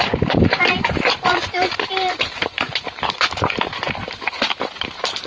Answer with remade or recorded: remade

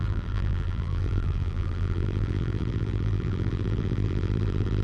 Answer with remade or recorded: remade